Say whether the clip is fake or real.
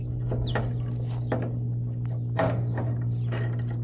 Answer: real